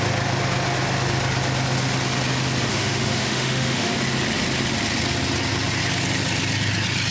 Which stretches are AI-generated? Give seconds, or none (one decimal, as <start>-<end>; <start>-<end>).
2.7-3.9